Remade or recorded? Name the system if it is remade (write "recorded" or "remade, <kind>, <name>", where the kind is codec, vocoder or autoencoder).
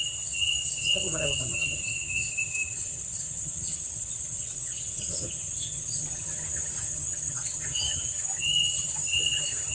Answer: remade, vocoder, HiFi-GAN